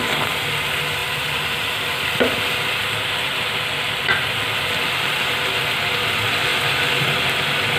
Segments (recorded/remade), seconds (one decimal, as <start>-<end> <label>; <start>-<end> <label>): 0.0-1.0 recorded; 1.0-5.2 remade; 5.2-7.8 recorded